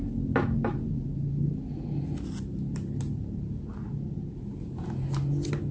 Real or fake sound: real